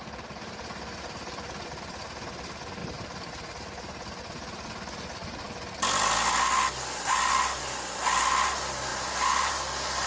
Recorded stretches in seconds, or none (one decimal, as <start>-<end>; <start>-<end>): 0.0-2.8; 4.2-8.9; 9.5-10.1